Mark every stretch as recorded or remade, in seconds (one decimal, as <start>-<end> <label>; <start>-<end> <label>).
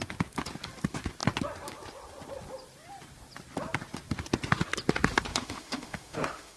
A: 0.0-5.3 recorded; 5.3-6.6 remade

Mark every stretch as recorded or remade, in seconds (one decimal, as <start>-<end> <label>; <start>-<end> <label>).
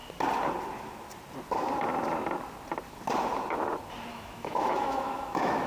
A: 0.0-4.1 recorded; 4.1-5.7 remade